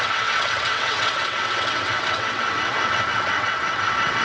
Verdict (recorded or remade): remade